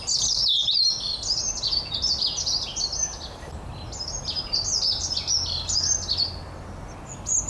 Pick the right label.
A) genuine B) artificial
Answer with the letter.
A